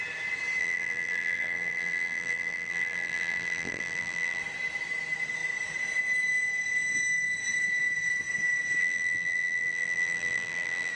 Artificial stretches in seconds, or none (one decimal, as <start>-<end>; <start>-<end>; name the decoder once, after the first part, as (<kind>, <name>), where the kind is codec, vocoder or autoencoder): 0.6-4.4 (vocoder, BigVGAN v2); 8.8-10.9